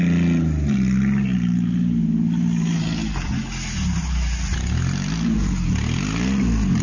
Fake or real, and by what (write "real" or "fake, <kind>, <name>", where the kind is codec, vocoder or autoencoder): real